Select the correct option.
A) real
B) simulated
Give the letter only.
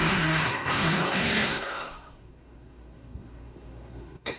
B